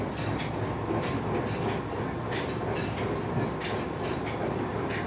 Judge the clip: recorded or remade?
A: recorded